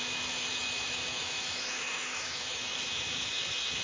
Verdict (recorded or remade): remade